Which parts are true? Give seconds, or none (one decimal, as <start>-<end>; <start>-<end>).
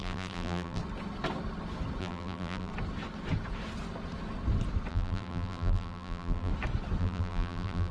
0.8-2.0; 2.7-4.9; 6.5-7.0